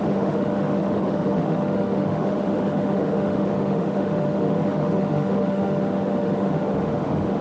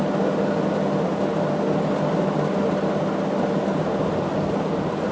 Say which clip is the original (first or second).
second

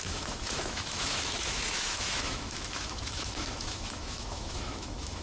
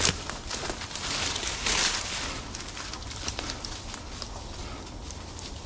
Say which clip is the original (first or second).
second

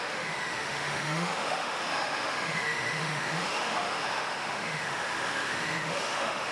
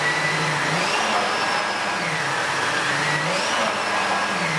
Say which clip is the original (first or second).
second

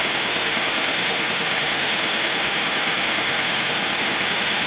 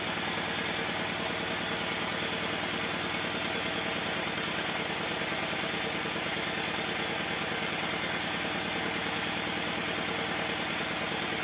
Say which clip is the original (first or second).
second